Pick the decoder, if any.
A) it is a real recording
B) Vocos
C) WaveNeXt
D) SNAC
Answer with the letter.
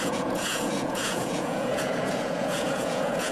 B